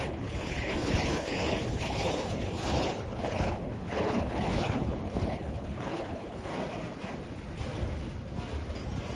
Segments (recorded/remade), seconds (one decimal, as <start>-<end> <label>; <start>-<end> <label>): 0.0-6.5 remade; 6.5-9.2 recorded